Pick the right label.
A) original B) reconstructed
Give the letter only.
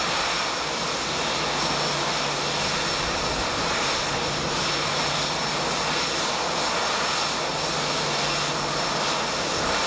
A